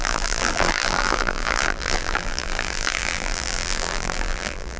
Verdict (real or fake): fake